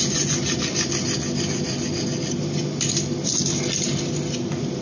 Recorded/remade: recorded